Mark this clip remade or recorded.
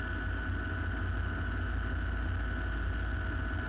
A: recorded